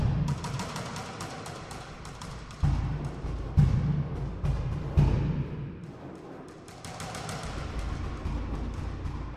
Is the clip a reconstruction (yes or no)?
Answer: no